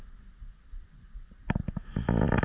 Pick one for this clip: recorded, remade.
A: recorded